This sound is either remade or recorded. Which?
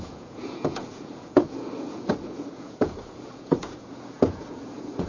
remade